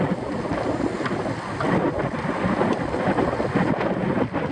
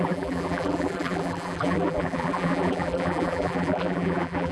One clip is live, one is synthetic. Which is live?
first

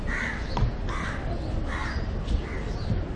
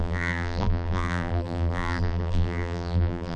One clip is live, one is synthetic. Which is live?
first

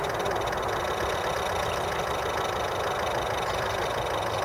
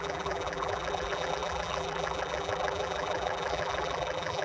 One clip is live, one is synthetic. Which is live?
first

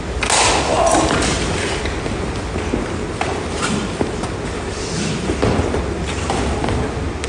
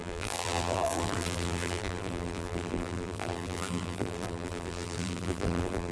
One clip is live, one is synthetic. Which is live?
first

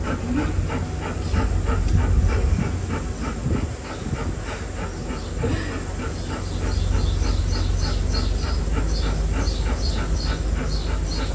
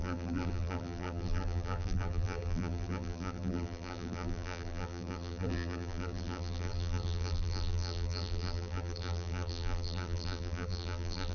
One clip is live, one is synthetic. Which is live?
first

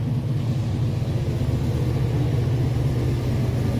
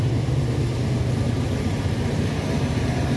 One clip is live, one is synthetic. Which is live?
first